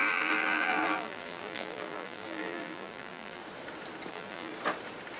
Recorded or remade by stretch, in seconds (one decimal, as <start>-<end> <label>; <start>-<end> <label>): 0.0-3.4 remade; 3.4-4.1 recorded; 4.1-4.5 remade; 4.5-5.2 recorded